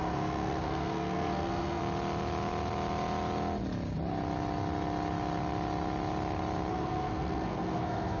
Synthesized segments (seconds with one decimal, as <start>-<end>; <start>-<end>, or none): 0.0-1.8; 6.7-8.2